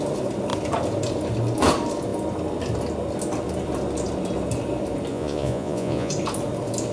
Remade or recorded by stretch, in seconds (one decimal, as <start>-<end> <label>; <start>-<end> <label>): 0.0-5.1 recorded; 5.1-6.1 remade; 6.1-6.9 recorded

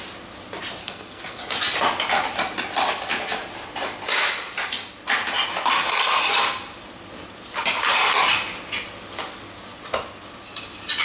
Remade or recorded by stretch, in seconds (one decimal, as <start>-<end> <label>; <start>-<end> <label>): 0.0-0.8 recorded; 0.8-1.4 remade; 1.4-11.0 recorded

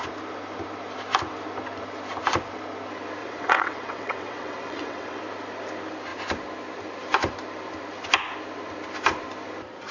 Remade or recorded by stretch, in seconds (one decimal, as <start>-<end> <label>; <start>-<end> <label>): 0.0-3.2 recorded; 3.2-5.2 remade; 5.2-9.9 recorded

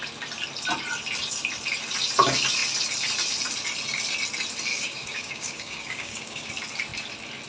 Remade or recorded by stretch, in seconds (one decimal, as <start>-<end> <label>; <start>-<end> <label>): 0.0-4.7 recorded; 4.7-6.5 remade; 6.5-7.5 recorded